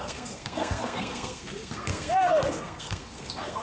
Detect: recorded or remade remade